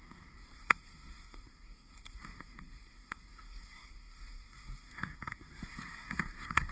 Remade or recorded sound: remade